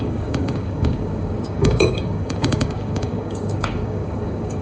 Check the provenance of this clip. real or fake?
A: fake